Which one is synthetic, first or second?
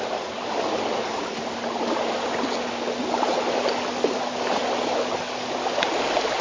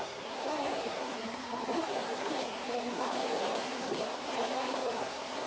second